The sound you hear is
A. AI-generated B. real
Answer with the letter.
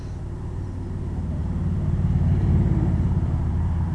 A